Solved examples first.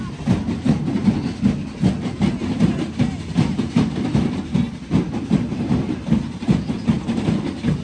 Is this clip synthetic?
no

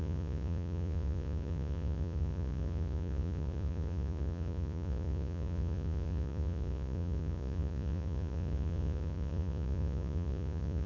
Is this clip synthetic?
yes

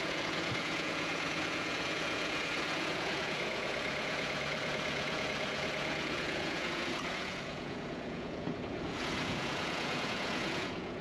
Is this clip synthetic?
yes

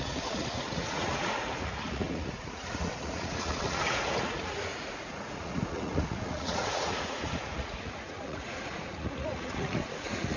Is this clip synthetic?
yes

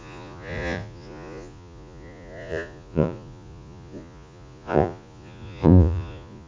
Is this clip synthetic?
yes